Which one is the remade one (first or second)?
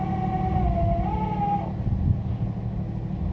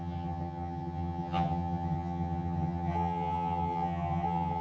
second